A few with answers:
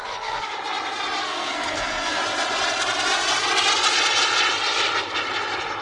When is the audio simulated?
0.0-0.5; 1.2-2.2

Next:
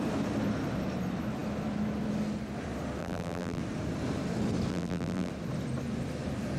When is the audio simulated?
3.0-3.6; 4.7-5.3